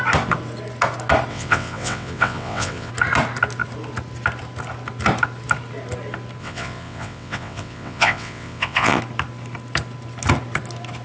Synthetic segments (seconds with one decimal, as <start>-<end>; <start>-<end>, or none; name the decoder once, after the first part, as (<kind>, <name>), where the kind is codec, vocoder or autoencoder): 1.3-2.9 (vocoder, WaveNeXt); 6.4-9.0

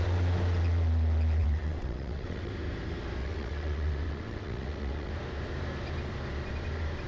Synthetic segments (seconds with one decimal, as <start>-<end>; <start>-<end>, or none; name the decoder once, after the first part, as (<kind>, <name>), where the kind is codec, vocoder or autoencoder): 1.4-2.5 (vocoder, WaveNeXt); 3.2-5.1

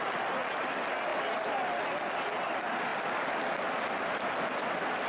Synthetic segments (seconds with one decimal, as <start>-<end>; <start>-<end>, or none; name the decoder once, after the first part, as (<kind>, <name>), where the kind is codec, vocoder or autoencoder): none

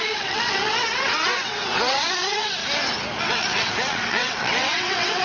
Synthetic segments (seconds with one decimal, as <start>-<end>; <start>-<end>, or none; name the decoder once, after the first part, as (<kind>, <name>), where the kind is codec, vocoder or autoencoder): 0.0-2.6 (vocoder, WaveNeXt); 3.2-5.2

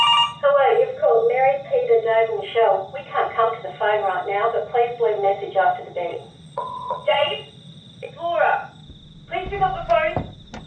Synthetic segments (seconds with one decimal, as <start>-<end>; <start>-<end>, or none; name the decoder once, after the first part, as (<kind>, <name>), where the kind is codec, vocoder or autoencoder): 6.1-8.1 (vocoder, WaveNeXt)

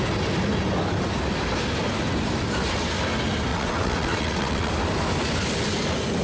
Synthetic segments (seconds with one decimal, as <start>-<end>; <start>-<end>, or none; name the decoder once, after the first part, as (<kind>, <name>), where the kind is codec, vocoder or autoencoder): 3.5-4.7 (vocoder, WaveNeXt)

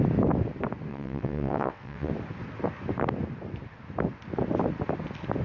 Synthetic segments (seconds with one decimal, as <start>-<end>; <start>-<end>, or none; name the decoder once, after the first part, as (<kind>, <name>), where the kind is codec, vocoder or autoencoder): 0.9-2.1 (vocoder, WaveNeXt)

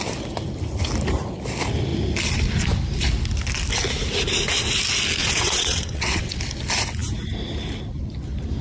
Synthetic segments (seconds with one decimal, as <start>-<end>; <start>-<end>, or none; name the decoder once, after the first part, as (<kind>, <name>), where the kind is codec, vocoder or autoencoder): 5.2-6.4 (vocoder, WaveNeXt)